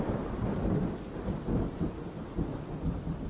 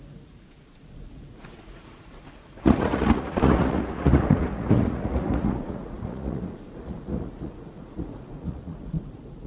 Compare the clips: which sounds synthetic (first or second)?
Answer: second